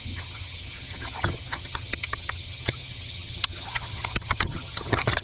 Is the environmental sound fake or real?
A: fake